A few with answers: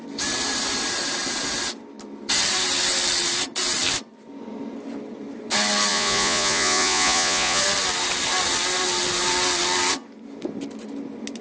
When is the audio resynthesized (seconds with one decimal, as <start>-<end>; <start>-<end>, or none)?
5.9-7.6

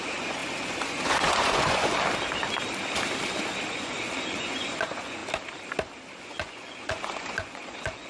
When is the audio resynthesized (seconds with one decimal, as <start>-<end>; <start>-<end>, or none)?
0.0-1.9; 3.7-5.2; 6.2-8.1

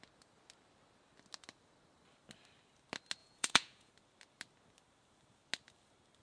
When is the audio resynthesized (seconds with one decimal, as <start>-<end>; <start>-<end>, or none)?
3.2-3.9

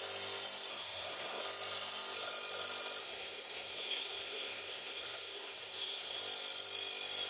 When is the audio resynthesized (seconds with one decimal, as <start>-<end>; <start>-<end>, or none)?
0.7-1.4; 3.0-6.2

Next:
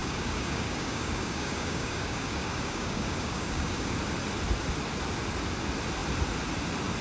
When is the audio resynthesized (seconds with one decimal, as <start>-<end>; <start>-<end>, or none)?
0.0-4.0

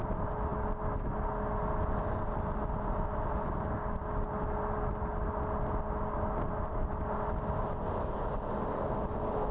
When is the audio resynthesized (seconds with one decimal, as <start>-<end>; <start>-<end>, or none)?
none

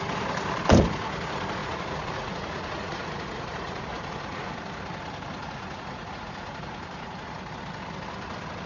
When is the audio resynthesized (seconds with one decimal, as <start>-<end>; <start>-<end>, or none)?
1.6-4.5; 5.4-7.4